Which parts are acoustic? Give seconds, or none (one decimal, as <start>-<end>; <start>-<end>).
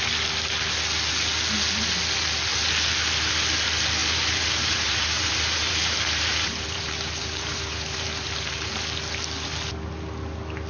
0.0-4.0; 8.7-10.7